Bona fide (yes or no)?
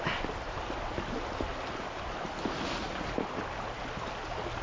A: yes